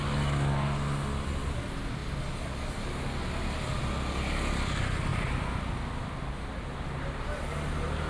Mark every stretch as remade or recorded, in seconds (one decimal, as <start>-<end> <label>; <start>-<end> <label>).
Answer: 0.0-8.1 recorded